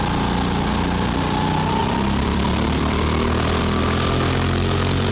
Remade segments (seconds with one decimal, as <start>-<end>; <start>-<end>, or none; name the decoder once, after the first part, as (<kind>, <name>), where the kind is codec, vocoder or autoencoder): 1.8-3.6 (vocoder, BigVGAN v2)